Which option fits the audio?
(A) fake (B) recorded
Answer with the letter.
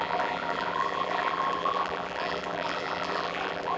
A